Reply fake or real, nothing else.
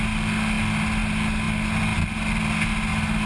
real